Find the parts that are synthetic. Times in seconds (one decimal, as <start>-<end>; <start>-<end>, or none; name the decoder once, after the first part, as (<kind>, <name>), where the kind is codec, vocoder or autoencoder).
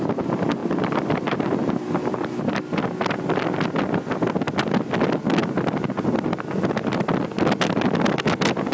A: 0.6-2.4 (vocoder, BigVGAN v2)